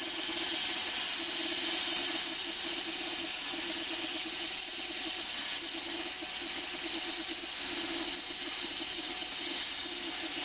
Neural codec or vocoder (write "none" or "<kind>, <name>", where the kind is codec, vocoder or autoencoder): none